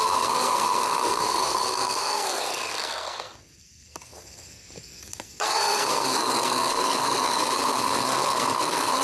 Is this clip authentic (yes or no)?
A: no